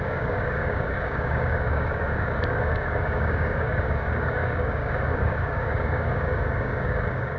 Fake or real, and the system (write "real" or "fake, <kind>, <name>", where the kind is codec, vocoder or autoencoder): fake, codec, DAC